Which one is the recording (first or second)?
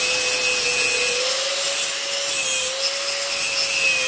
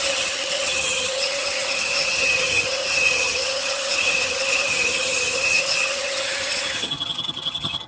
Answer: first